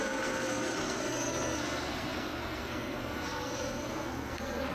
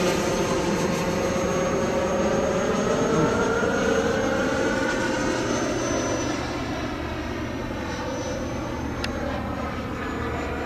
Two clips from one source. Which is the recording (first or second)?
second